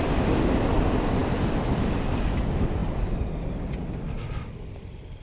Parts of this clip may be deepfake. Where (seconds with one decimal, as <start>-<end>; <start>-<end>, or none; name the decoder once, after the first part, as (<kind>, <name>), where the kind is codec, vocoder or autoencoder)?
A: none